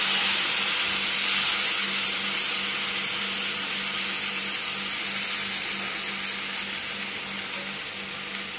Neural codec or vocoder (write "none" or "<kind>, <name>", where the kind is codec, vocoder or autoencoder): none